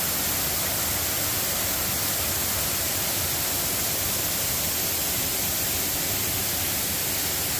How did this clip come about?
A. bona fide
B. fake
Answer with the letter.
A